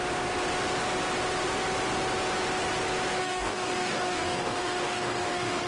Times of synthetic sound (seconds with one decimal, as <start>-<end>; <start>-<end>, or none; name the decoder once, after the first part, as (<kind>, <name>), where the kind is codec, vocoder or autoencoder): 3.2-5.7 (codec, DAC)